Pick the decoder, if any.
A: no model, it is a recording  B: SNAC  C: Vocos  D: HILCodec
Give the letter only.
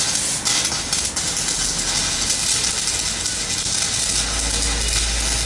A